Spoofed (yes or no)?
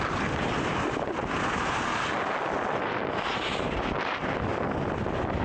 no